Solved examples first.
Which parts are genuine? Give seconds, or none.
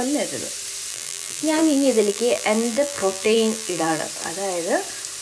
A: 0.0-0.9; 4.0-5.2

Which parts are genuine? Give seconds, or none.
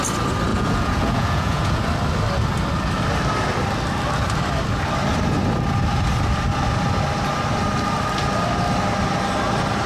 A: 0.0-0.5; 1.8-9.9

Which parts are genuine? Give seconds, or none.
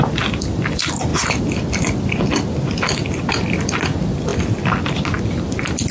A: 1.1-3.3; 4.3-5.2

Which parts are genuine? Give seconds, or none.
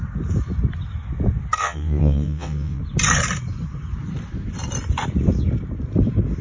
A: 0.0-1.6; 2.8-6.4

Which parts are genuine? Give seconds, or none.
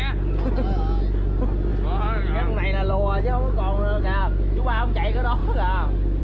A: 0.0-6.2